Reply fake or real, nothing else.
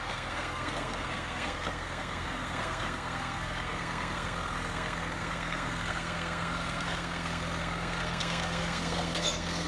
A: fake